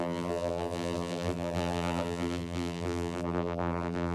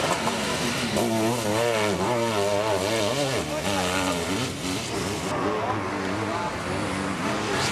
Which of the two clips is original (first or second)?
second